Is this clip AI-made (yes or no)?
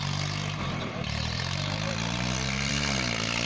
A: yes